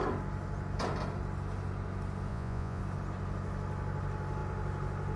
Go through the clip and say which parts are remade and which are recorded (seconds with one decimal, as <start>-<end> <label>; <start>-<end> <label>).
0.0-2.3 recorded; 2.3-2.8 remade; 2.8-5.2 recorded